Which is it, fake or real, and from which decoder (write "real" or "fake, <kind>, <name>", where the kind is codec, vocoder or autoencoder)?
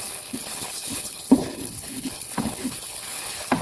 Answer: fake, codec, HILCodec